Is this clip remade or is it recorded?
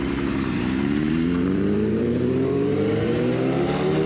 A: remade